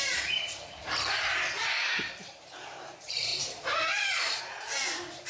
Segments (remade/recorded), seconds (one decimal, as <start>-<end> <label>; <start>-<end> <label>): 0.0-5.3 remade